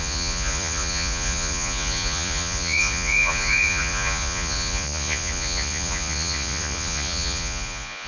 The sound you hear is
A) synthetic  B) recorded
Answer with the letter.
A